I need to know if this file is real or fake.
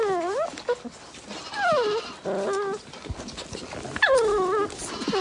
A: real